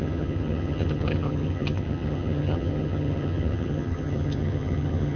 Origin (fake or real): fake